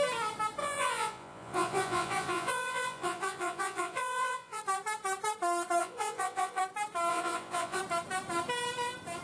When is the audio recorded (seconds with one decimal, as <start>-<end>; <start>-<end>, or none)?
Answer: 0.0-0.6; 4.6-5.8; 6.6-7.1; 7.8-9.2